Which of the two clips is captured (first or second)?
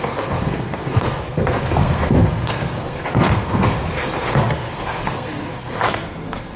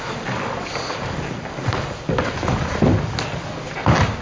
second